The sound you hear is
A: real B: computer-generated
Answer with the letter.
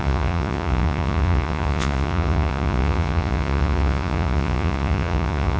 B